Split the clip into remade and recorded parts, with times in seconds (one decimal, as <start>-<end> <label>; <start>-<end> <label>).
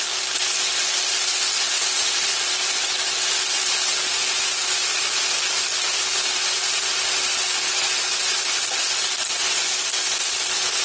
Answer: 0.0-10.8 recorded